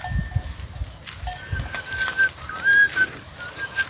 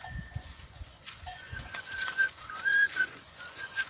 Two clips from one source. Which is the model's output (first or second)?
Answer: second